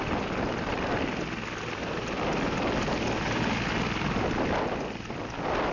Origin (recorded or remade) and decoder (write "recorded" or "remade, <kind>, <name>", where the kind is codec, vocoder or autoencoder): recorded